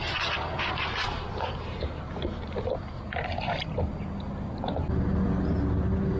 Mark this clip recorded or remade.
recorded